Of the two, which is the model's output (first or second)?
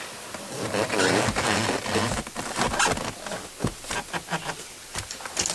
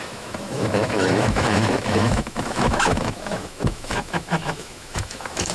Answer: second